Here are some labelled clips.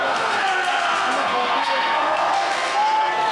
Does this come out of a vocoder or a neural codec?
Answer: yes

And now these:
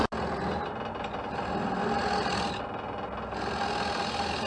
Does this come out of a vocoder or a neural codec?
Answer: no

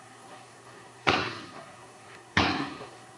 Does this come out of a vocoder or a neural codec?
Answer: yes